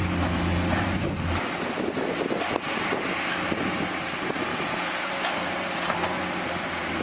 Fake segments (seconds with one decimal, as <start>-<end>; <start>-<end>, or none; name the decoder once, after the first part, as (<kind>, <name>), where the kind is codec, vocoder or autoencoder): 4.5-5.1 (vocoder, Vocos)